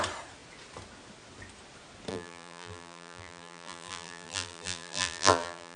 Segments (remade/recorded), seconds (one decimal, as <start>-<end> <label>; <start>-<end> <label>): 0.0-2.1 recorded; 2.1-5.8 remade